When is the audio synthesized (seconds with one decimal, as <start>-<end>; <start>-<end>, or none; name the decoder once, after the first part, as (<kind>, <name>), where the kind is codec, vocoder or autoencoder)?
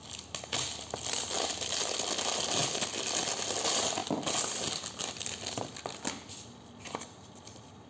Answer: none